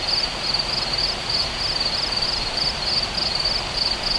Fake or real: real